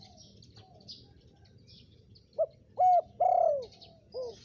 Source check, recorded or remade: recorded